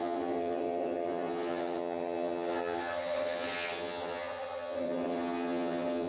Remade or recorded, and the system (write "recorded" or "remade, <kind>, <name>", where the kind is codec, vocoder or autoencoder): remade, vocoder, HiFi-GAN